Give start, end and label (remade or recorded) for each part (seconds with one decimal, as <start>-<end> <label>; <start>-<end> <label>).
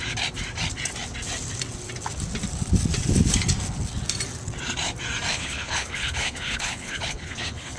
0.0-5.3 recorded; 5.3-7.8 remade